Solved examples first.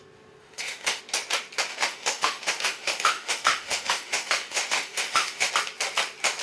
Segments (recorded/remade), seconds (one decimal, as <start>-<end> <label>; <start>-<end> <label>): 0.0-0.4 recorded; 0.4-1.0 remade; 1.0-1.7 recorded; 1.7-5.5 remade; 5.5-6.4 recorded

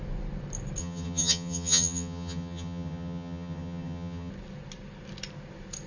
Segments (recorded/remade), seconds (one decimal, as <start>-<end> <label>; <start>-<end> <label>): 0.0-0.8 recorded; 0.8-4.3 remade; 4.3-5.9 recorded

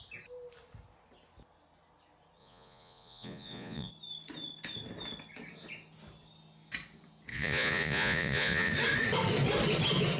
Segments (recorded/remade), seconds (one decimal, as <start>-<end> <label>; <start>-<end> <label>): 0.0-2.4 recorded; 2.4-3.9 remade; 3.9-7.3 recorded; 7.3-8.7 remade; 8.7-10.2 recorded